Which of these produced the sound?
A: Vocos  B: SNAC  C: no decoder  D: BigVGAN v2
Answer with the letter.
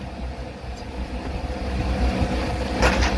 C